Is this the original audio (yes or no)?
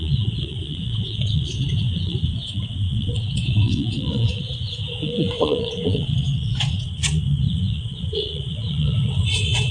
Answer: no